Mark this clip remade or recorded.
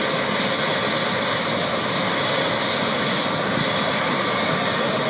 recorded